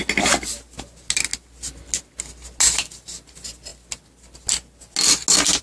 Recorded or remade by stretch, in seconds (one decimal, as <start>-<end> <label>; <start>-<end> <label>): 0.0-5.6 recorded